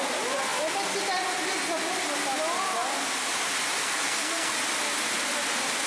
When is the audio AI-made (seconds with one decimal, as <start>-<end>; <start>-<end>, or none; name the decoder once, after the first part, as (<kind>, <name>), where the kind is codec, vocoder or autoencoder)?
3.8-4.5 (codec, SNAC)